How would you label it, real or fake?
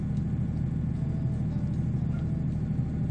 real